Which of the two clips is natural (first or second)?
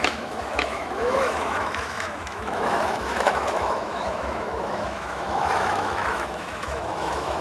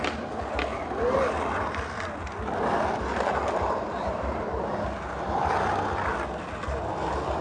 second